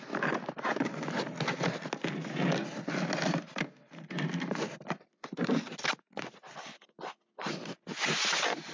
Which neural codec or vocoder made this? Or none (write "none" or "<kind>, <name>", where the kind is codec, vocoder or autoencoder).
none